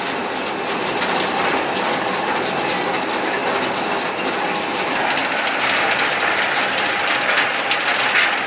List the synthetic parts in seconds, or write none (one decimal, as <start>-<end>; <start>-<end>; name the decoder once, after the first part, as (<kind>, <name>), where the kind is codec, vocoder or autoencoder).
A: 0.0-3.4 (vocoder, BigVGAN v2); 4.1-5.2; 6.9-8.5